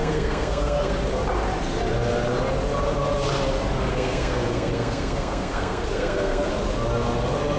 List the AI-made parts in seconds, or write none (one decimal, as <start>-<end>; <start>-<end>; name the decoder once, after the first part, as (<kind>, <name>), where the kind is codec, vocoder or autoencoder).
0.0-0.9 (codec, SNAC); 3.9-6.5